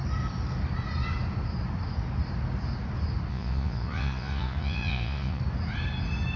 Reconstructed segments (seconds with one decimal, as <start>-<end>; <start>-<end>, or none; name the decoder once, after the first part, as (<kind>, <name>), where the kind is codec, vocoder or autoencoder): 3.3-5.4 (vocoder, Vocos)